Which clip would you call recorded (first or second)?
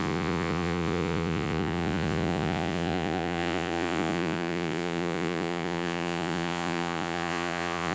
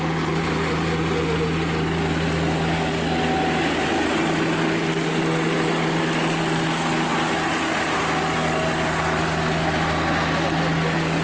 second